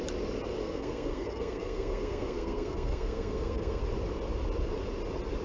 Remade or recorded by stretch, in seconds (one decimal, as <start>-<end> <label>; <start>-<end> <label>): 0.0-0.6 recorded; 0.6-3.8 remade; 3.8-5.4 recorded